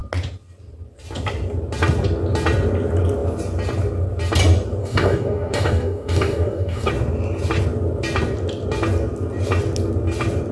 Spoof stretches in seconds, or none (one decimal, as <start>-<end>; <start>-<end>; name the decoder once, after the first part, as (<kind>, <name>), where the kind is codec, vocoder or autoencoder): 4.8-6.9 (codec, DAC)